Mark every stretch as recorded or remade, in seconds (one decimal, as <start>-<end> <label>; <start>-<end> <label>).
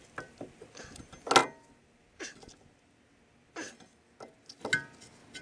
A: 0.0-5.4 recorded